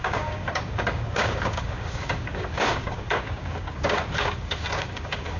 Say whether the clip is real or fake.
fake